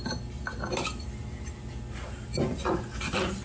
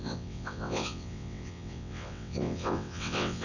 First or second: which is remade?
second